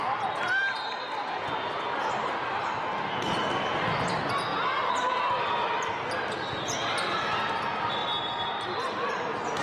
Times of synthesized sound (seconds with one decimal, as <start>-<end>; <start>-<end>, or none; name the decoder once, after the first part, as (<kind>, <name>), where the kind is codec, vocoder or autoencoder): none